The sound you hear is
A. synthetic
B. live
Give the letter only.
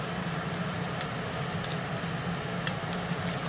B